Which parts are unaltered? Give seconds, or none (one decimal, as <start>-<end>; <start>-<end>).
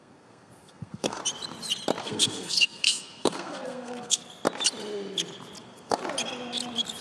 1.2-2.0; 4.2-5.6; 6.0-7.0